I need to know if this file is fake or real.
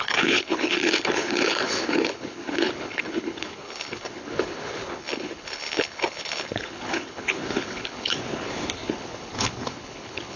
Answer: fake